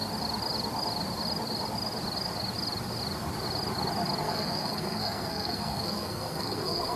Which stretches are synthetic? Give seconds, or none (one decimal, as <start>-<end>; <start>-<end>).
4.2-7.0